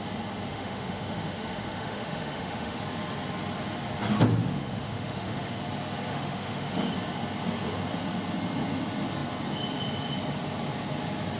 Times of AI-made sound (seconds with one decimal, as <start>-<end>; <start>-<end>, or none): 0.5-2.8; 4.4-5.6; 6.1-6.9